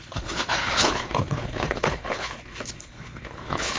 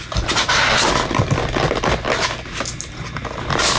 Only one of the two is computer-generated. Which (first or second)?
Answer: first